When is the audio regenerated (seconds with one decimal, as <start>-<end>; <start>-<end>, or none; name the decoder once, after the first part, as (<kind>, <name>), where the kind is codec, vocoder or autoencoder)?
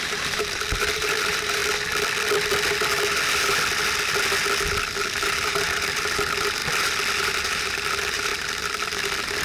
0.0-1.6 (vocoder, BigVGAN v2); 5.0-6.6; 7.2-8.3